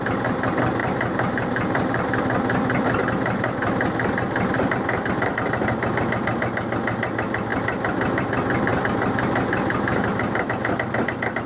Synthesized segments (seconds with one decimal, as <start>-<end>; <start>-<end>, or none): 0.8-2.2